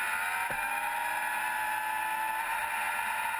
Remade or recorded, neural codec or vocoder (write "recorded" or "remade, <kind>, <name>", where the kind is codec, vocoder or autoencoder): recorded